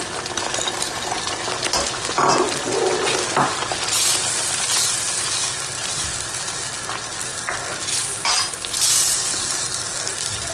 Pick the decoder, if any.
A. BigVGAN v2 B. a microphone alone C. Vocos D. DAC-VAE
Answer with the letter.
B